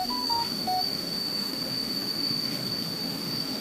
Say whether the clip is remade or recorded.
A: remade